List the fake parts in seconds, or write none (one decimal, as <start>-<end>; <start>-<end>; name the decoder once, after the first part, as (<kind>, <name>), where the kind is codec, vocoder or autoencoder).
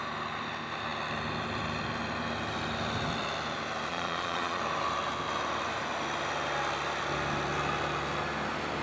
3.9-4.6 (vocoder, Vocos)